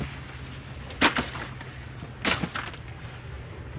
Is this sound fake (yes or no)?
no